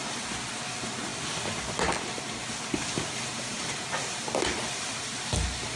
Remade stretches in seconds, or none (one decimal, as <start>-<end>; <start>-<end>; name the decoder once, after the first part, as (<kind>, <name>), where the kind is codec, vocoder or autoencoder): none